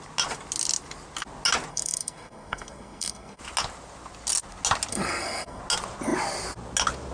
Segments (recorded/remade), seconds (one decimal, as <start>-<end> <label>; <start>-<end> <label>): 0.0-1.7 recorded; 1.7-3.4 remade; 3.4-4.9 recorded; 4.9-5.6 remade; 5.6-7.1 recorded